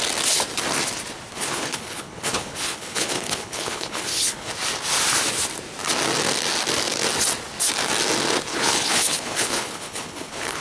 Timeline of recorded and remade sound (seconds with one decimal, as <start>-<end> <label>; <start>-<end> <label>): 0.0-1.3 recorded; 1.3-4.5 remade; 4.5-8.5 recorded; 8.5-10.6 remade

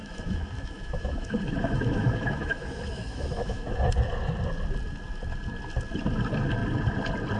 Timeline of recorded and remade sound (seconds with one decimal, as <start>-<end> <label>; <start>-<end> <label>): 0.0-3.9 remade; 3.9-7.4 recorded

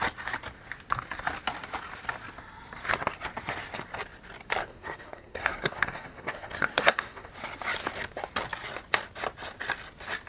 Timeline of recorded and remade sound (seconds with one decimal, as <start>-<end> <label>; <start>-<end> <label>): 0.0-4.6 recorded; 4.6-7.3 remade; 7.3-10.3 recorded